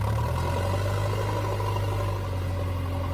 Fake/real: real